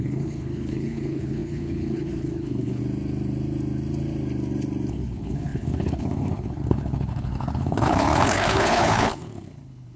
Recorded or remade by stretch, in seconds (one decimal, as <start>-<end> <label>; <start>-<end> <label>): 0.0-2.8 remade; 2.8-4.9 recorded; 4.9-10.0 remade